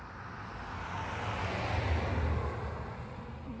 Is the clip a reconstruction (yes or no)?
no